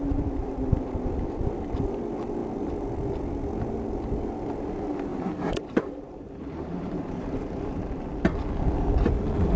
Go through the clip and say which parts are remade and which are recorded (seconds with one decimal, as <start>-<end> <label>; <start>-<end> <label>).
0.0-5.1 recorded; 5.1-7.8 remade; 7.8-9.6 recorded